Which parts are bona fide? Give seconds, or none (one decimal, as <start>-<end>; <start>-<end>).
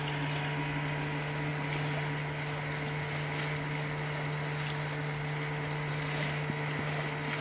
0.0-7.4